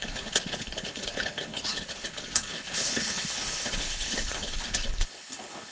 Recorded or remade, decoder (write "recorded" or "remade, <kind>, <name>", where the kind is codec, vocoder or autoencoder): remade, codec, HILCodec